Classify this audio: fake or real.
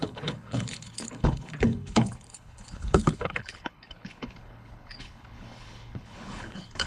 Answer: fake